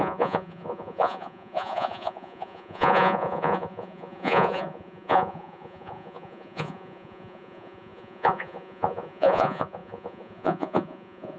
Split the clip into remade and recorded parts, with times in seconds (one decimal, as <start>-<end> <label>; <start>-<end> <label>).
0.0-11.4 remade